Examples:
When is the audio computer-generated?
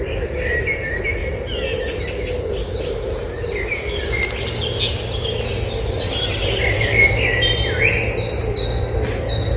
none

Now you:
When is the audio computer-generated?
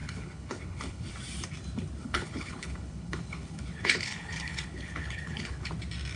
0.0-1.1; 2.0-5.7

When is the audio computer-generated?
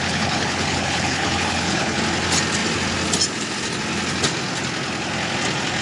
0.0-2.0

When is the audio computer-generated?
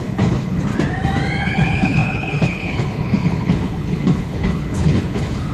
0.0-0.7; 1.4-5.5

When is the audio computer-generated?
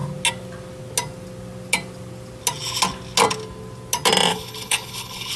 4.3-5.4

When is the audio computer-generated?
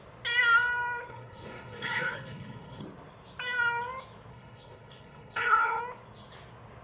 1.1-2.8; 4.3-5.8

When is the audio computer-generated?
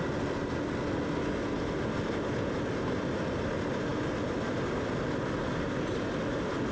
none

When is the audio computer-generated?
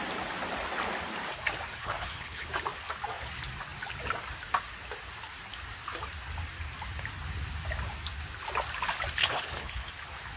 1.7-2.5; 9.2-9.9